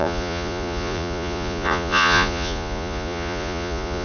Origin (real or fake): fake